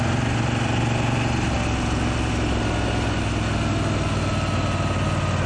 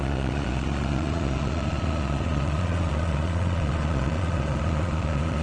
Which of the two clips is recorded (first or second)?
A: first